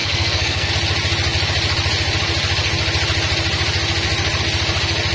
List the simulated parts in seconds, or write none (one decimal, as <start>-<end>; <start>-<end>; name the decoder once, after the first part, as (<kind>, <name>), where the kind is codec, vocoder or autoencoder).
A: 0.0-0.7 (codec, SNAC)